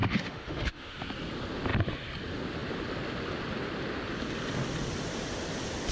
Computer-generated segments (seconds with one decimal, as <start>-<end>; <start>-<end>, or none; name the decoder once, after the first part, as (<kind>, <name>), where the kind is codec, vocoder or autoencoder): 0.0-1.0 (autoencoder, DAC-VAE)